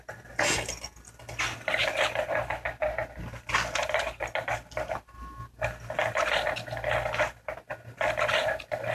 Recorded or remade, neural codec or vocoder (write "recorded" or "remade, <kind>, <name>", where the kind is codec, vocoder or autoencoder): remade, vocoder, BigVGAN v2